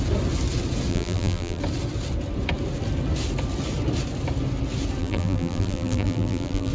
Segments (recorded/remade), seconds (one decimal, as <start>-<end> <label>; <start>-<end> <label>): 0.0-0.9 recorded; 0.9-1.6 remade; 1.6-5.0 recorded; 5.0-6.7 remade